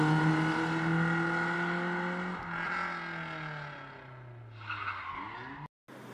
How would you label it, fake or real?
real